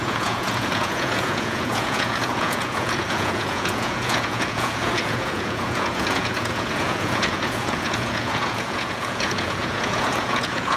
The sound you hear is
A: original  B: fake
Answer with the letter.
B